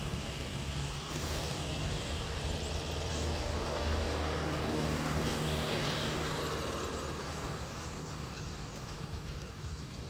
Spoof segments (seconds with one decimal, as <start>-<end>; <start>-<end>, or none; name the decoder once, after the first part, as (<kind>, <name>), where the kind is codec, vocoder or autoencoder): 0.0-2.4 (codec, DAC); 3.1-6.4; 7.2-10.1